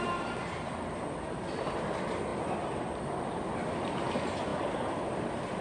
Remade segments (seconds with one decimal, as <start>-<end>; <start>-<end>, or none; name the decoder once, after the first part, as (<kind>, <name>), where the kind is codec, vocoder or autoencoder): 0.0-2.3 (vocoder, BigVGAN v2); 3.3-5.6